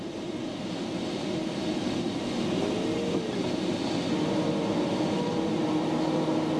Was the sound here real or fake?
real